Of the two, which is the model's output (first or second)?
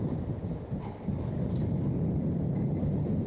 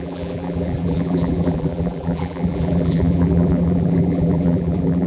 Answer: second